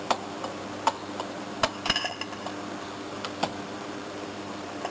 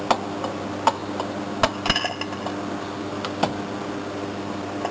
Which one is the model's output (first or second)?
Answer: first